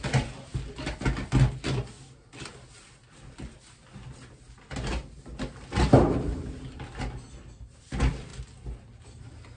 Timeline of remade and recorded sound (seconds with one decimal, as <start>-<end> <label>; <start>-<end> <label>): 0.0-9.6 recorded